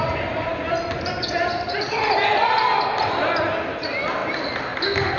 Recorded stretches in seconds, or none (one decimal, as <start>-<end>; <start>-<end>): 0.0-5.2